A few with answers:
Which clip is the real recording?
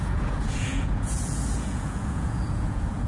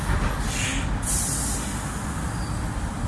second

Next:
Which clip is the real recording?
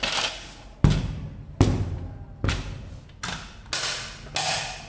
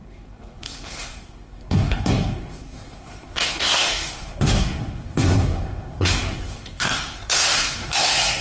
first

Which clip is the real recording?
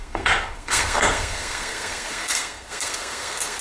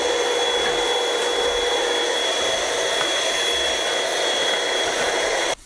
second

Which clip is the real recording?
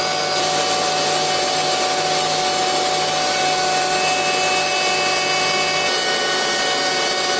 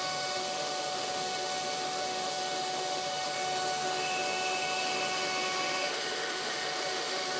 first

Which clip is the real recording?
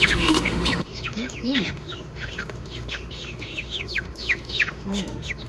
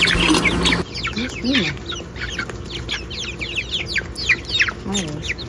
second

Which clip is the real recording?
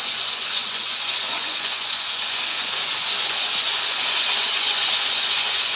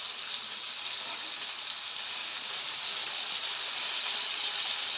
second